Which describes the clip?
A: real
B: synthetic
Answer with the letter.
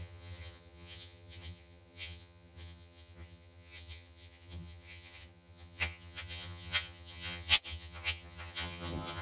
B